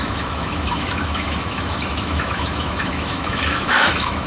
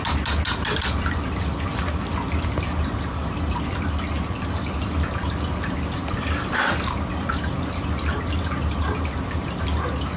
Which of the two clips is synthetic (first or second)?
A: first